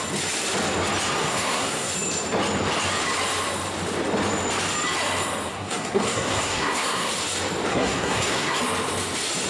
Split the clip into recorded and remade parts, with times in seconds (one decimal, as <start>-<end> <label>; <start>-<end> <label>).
0.0-1.2 recorded; 1.2-1.9 remade; 1.9-5.5 recorded; 5.5-7.1 remade; 7.1-7.7 recorded; 7.7-8.6 remade; 8.6-9.5 recorded